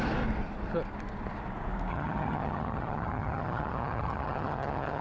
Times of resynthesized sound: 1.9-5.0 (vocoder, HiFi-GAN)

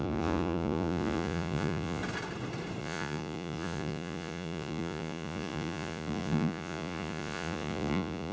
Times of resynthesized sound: 0.0-2.0 (vocoder, Vocos); 2.8-8.3

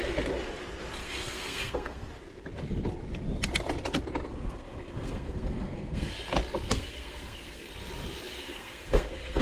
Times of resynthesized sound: 1.0-2.1 (codec, SNAC); 4.3-6.1; 6.7-7.7; 8.4-9.4

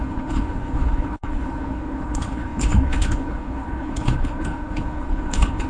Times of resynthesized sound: 0.0-5.7 (codec, HILCodec)

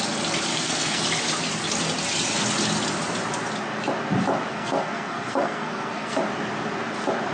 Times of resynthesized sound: 0.5-1.0 (codec, SNAC); 4.5-6.2

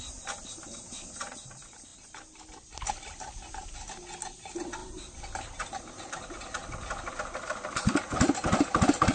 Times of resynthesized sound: none